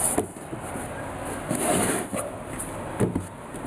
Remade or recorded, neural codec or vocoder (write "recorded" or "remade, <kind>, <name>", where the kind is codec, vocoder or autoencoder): recorded